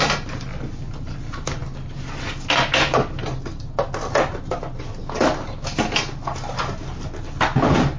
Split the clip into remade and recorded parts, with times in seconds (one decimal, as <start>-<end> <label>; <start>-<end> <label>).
0.0-8.0 recorded